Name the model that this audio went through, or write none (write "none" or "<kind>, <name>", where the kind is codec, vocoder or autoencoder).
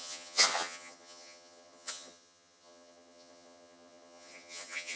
vocoder, HiFi-GAN